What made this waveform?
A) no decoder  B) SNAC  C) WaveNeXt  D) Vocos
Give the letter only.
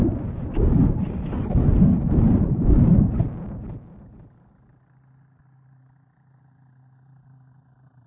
A